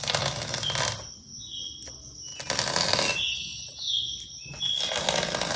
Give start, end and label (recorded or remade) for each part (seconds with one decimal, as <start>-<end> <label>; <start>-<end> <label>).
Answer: 0.0-5.6 recorded